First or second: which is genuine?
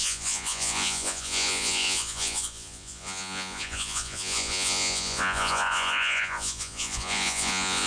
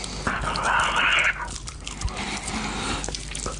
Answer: second